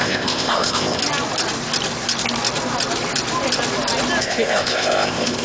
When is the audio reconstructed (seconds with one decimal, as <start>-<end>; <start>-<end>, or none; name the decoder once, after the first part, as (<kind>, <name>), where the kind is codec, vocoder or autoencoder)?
0.0-1.0 (codec, ZipCodec); 4.2-5.4